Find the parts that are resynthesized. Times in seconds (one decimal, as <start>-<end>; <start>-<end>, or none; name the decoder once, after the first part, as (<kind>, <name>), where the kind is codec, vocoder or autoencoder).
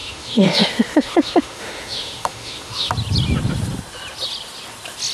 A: 0.0-2.9 (autoencoder, DAC-VAE)